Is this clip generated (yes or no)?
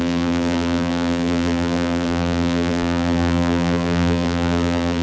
yes